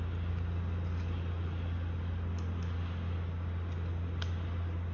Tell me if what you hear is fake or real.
real